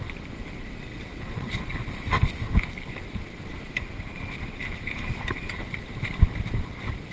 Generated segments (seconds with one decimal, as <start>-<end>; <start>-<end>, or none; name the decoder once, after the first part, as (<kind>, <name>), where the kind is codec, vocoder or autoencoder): 0.9-1.6 (vocoder, WaveNeXt)